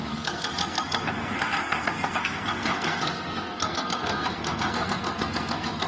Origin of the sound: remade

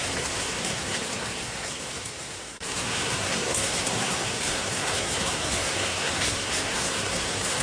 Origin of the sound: remade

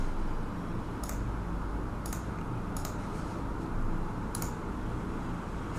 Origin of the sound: recorded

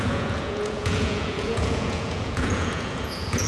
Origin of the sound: remade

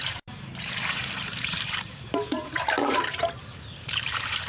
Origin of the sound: remade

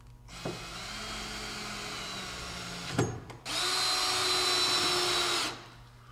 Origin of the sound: recorded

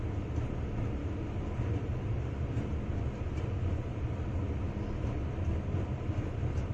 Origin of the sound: recorded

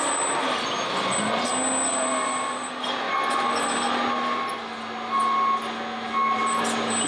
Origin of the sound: recorded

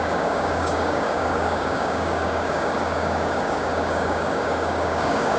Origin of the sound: remade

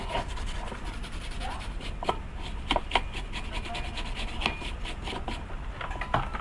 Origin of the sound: recorded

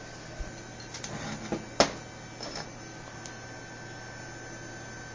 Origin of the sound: recorded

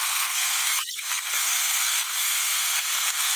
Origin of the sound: remade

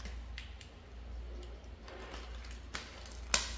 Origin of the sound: recorded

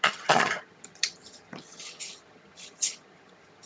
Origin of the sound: remade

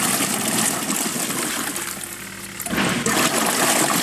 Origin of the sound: recorded